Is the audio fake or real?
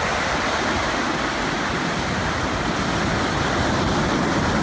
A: real